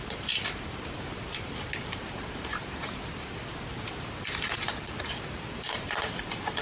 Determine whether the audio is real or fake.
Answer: fake